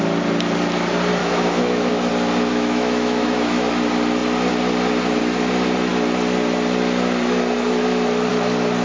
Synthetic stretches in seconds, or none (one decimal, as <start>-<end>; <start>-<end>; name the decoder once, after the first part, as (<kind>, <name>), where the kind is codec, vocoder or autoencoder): 1.2-2.1 (autoencoder, DAC-VAE); 2.5-3.7